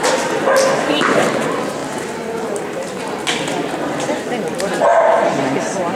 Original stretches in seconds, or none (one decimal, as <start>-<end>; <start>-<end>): 0.0-4.9